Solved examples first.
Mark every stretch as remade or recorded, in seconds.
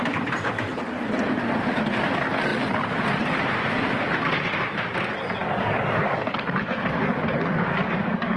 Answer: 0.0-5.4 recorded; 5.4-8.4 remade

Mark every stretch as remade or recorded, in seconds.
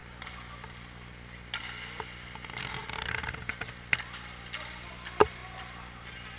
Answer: 0.0-1.6 remade; 1.6-2.8 recorded; 2.8-4.9 remade; 4.9-5.4 recorded; 5.4-6.0 remade; 6.0-6.4 recorded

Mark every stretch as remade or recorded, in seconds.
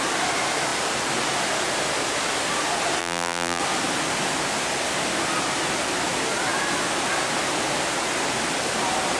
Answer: 0.0-3.0 recorded; 3.0-3.6 remade; 3.6-9.2 recorded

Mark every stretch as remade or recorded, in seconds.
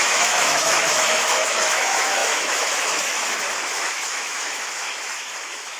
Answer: 0.0-5.8 remade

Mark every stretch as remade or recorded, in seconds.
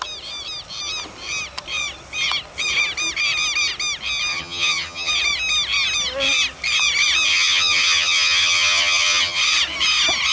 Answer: 0.0-4.3 recorded; 4.3-5.1 remade; 5.1-7.3 recorded; 7.3-9.4 remade; 9.4-10.3 recorded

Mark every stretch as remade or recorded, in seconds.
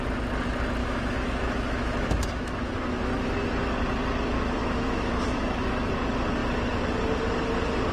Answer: 0.0-0.8 recorded; 0.8-3.3 remade; 3.3-4.6 recorded; 4.6-5.9 remade; 5.9-7.9 recorded